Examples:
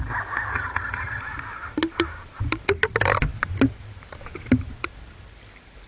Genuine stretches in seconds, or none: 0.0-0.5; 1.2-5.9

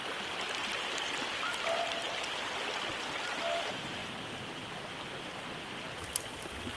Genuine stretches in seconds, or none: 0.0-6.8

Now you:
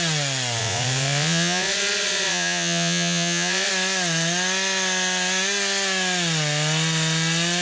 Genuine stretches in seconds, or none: 0.0-0.6; 3.7-7.6

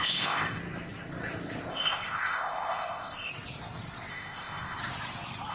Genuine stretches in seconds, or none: 0.6-1.7; 3.3-4.1; 4.8-5.5

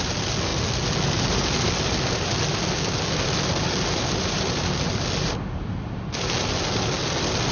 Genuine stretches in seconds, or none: 0.0-7.5

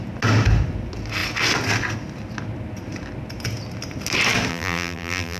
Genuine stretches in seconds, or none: 0.0-4.5